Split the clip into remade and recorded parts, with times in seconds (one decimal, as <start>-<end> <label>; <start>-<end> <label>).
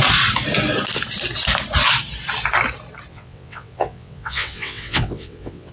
0.0-3.1 recorded; 3.1-5.7 remade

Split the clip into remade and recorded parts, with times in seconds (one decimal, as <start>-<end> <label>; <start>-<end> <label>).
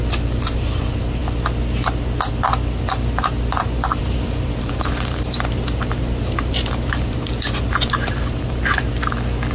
0.0-4.0 recorded; 4.0-8.9 remade; 8.9-9.5 recorded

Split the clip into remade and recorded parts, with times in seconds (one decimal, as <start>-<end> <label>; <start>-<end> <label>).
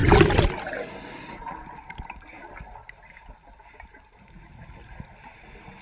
0.0-5.8 recorded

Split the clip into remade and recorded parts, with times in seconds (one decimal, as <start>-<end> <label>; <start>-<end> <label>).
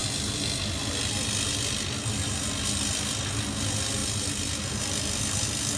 0.0-5.8 recorded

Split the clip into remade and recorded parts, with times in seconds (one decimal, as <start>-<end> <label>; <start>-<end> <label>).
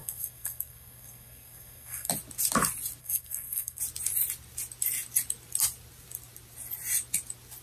0.0-2.1 remade; 2.1-3.0 recorded; 3.0-3.8 remade; 3.8-7.6 recorded